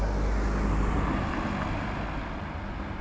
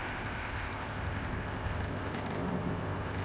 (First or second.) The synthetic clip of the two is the second